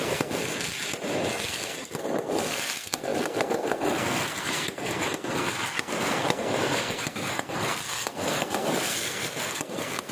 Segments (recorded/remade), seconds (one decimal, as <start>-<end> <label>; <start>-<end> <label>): 0.0-0.7 remade; 0.7-1.3 recorded; 1.3-10.1 remade